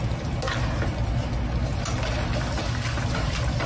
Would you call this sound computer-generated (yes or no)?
no